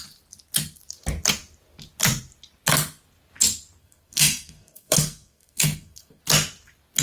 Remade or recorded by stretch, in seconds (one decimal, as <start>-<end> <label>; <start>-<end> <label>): 0.0-3.8 recorded; 3.8-6.2 remade; 6.2-7.0 recorded